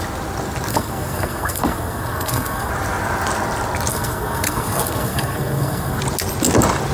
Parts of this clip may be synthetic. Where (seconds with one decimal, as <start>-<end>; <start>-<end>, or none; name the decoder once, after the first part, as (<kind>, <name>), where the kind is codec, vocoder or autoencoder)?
0.7-2.7 (codec, SNAC); 3.9-6.0